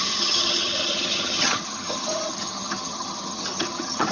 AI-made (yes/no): yes